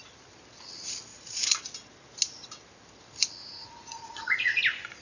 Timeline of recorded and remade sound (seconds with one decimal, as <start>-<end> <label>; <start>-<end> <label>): 0.0-1.1 recorded; 1.1-1.6 remade; 1.6-3.4 recorded; 3.4-4.6 remade; 4.6-5.0 recorded